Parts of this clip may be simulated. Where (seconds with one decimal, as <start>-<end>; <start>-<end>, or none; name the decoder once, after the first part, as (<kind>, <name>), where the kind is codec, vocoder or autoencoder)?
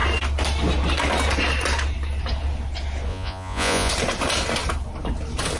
3.1-3.9 (vocoder, Vocos)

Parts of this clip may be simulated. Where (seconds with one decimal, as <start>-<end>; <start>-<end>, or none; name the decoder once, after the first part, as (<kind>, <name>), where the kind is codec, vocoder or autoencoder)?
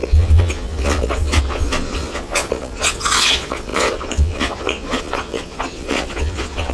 0.0-6.7 (vocoder, Vocos)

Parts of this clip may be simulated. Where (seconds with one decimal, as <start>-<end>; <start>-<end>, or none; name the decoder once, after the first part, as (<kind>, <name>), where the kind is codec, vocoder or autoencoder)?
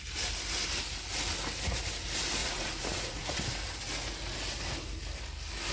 2.4-3.4 (vocoder, Vocos)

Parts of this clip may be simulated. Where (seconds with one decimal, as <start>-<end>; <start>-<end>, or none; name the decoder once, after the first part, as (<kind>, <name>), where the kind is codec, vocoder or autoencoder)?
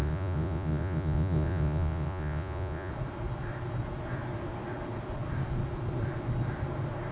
0.0-2.9 (vocoder, Vocos)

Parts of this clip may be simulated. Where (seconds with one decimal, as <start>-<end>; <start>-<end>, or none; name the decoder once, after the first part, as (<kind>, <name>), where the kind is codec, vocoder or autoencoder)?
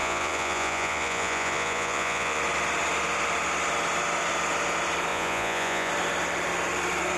0.0-2.4 (vocoder, Vocos); 5.1-5.9